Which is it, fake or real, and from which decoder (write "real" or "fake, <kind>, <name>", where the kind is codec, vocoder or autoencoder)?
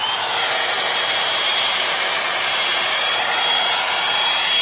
real